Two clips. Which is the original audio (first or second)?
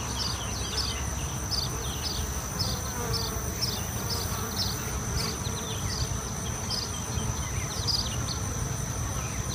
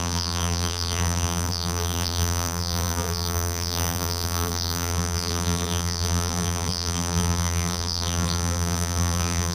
first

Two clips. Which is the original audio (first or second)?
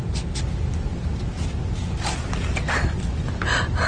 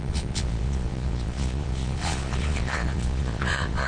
first